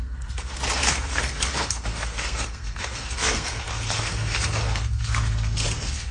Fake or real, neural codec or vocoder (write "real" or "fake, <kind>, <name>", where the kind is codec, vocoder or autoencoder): fake, codec, SNAC